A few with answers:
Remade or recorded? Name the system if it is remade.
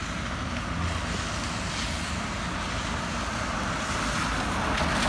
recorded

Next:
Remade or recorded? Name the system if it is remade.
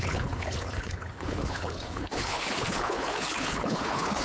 remade, codec, HILCodec